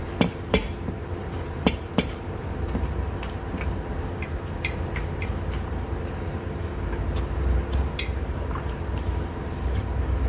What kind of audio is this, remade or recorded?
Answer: remade